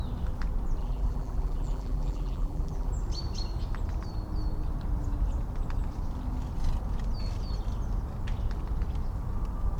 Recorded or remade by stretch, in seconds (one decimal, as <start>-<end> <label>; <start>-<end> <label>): 0.0-0.8 recorded; 0.8-2.9 remade; 2.9-9.8 recorded